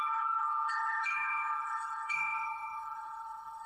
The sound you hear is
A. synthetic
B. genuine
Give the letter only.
A